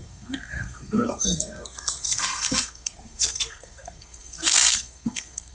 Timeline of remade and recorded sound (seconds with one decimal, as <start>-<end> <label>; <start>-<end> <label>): 0.0-5.5 remade

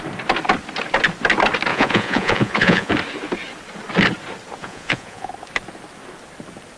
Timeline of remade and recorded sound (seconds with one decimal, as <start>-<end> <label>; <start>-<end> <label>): 0.0-1.7 recorded; 1.7-2.9 remade; 2.9-4.6 recorded; 4.6-5.3 remade; 5.3-6.8 recorded

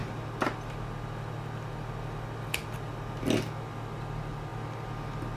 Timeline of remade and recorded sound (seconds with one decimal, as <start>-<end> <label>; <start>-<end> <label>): 0.0-5.4 recorded

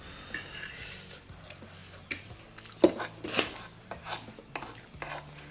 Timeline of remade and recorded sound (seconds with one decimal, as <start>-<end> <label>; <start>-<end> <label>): 0.0-5.5 recorded

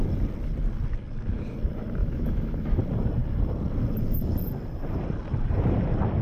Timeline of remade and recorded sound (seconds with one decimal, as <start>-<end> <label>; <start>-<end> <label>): 0.0-2.0 recorded; 2.0-2.8 remade; 2.8-6.2 recorded

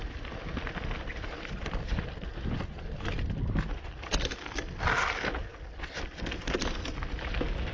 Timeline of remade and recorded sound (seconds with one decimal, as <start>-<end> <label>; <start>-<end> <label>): 0.0-7.7 recorded

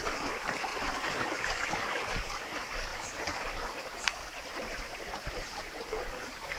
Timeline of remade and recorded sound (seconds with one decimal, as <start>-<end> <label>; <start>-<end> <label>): 0.0-4.2 remade; 4.2-5.8 recorded; 5.8-6.6 remade